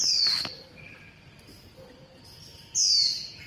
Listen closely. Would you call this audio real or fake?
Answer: real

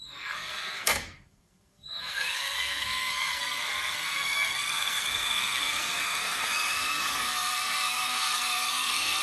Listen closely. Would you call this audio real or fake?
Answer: fake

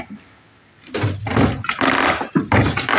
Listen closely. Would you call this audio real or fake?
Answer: real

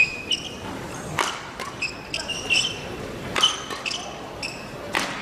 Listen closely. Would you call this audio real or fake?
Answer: real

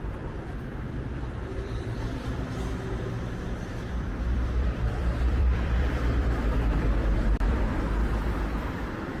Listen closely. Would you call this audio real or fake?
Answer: fake